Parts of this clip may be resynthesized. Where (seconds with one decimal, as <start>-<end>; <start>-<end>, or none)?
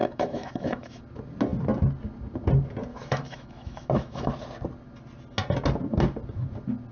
0.0-1.0; 2.9-4.3